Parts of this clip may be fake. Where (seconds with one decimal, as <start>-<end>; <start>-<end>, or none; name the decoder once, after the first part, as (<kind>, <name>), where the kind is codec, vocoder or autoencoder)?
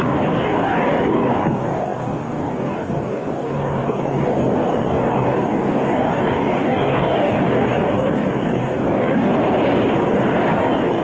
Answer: 0.0-9.3 (codec, DAC); 10.5-11.0